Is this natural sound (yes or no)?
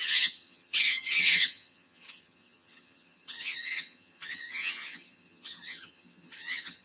no